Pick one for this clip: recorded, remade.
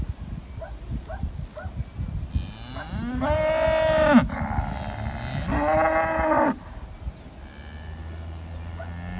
recorded